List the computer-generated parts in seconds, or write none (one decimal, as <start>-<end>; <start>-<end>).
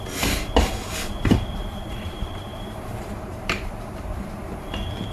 1.6-4.4